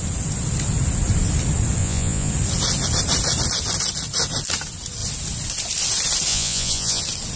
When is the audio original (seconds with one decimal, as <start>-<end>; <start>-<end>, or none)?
0.0-1.8; 2.3-6.3; 7.0-7.4